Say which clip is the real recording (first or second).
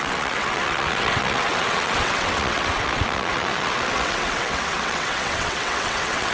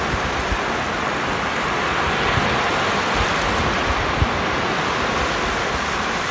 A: second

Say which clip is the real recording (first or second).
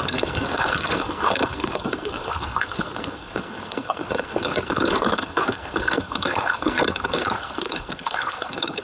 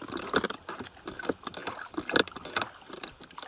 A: second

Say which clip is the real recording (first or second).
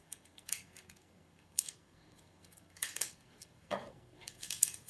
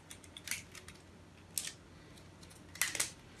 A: second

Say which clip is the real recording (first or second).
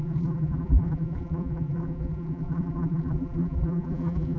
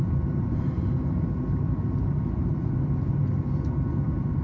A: second